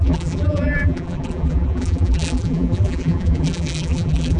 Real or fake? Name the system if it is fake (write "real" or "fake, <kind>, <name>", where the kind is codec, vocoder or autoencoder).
fake, vocoder, BigVGAN v2